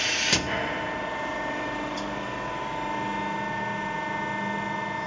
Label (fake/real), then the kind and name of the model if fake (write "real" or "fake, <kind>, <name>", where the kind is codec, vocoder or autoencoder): real